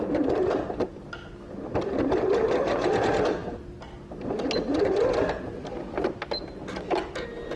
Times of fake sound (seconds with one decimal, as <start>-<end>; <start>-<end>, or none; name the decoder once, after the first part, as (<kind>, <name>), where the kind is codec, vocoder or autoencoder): none